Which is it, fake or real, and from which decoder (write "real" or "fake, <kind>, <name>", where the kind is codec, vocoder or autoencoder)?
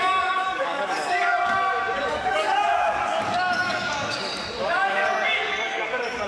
fake, codec, DAC